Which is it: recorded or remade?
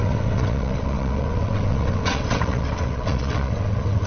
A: remade